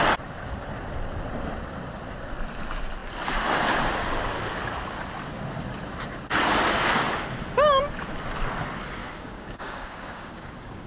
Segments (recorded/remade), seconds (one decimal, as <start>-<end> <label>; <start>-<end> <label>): 0.0-9.0 recorded; 9.0-10.9 remade